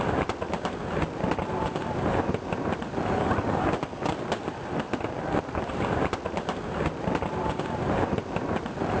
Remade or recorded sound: recorded